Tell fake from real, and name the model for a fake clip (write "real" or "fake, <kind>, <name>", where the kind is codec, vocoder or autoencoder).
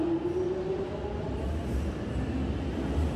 real